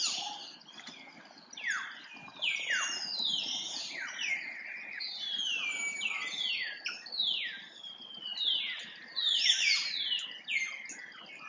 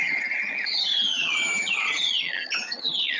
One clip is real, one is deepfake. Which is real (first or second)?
first